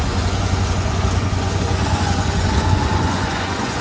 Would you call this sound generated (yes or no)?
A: yes